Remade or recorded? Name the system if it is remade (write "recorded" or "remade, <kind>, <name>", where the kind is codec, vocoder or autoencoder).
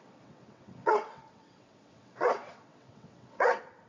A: remade, vocoder, WaveNeXt